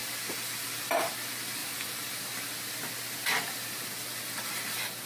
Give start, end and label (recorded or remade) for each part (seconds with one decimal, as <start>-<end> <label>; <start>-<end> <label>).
0.0-1.1 remade; 1.1-1.6 recorded; 1.6-2.7 remade; 2.7-4.1 recorded; 4.1-5.1 remade